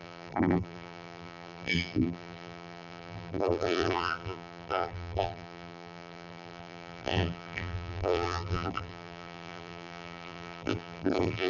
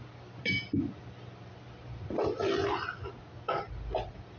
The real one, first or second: second